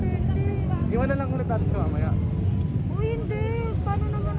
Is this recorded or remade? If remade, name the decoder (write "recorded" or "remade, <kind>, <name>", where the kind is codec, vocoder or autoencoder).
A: recorded